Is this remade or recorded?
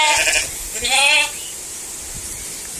recorded